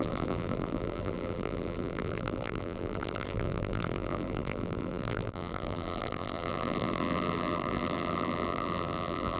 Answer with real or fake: fake